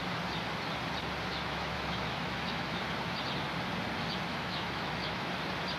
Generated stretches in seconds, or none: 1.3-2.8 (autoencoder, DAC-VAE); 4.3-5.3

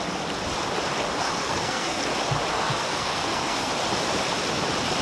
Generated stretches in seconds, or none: 1.4-2.0 (codec, SNAC); 2.5-3.7

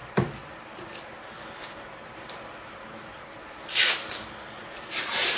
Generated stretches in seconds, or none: none

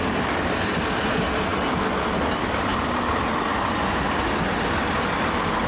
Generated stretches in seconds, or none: none

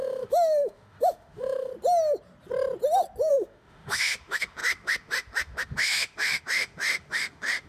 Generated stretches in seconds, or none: 0.0-1.7 (autoencoder, DAC-VAE); 3.3-7.7

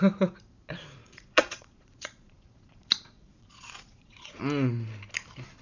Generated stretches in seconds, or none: 1.0-4.4 (vocoder, Vocos)